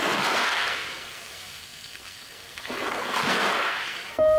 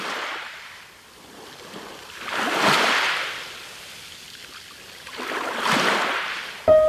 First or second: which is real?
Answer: second